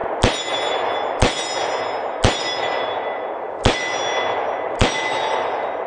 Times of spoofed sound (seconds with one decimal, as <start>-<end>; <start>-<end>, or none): none